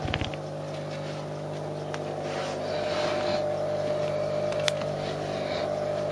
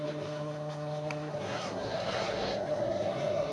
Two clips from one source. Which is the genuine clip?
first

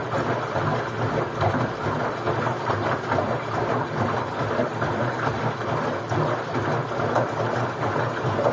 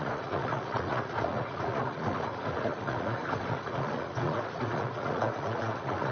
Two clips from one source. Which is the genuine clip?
first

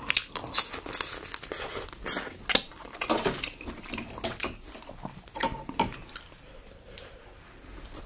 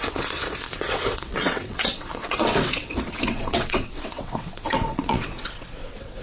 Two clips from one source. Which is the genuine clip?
first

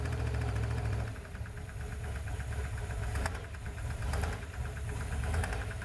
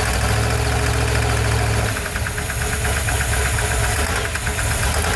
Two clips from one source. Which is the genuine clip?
second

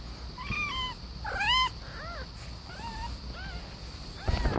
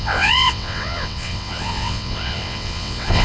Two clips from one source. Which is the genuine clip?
first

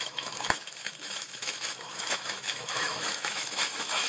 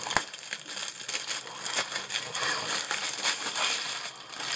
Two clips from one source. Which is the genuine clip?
second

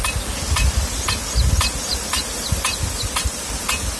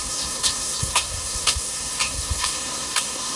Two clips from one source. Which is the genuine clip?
first